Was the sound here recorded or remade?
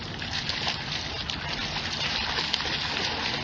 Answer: recorded